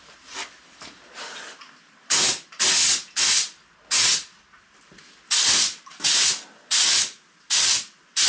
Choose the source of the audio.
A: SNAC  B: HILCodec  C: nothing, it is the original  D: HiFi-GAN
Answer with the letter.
C